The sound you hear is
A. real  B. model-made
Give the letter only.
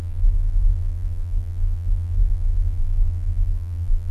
B